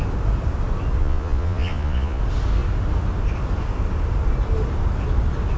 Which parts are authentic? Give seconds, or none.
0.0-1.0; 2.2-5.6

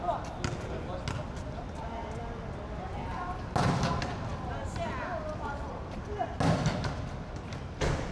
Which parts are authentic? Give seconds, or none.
0.0-8.1

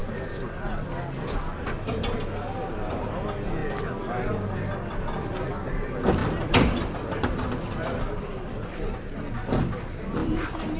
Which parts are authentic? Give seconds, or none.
0.0-6.2; 9.3-10.2